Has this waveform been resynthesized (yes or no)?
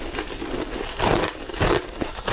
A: no